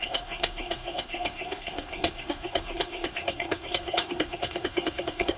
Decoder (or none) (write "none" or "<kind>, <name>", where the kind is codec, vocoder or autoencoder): codec, SNAC